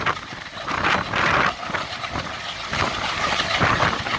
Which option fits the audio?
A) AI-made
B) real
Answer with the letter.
B